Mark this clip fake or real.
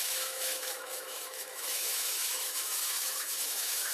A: fake